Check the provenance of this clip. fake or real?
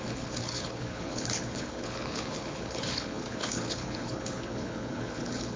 fake